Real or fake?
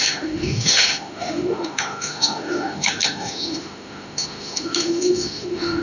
fake